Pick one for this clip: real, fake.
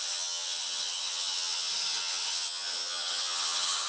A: fake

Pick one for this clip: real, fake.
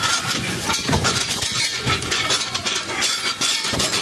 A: fake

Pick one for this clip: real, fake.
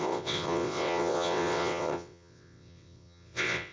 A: fake